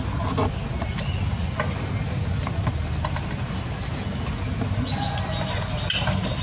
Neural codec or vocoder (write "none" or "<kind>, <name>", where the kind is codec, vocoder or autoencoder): none